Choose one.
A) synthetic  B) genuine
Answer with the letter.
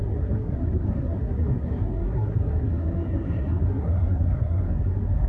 A